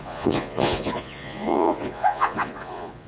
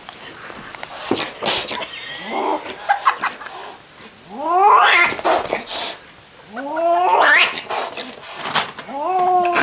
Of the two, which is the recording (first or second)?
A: second